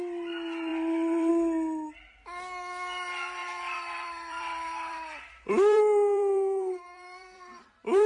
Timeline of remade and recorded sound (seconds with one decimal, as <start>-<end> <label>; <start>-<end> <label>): 0.0-0.7 recorded; 0.7-1.3 remade; 1.3-3.4 recorded; 3.4-8.1 remade